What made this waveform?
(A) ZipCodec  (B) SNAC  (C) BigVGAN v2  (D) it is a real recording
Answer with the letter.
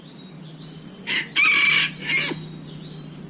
D